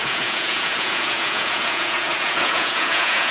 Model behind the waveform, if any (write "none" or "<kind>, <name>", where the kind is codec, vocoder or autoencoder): vocoder, Vocos